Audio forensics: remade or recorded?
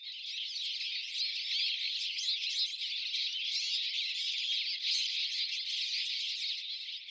recorded